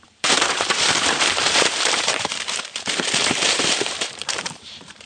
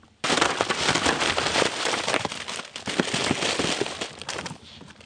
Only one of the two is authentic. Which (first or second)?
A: second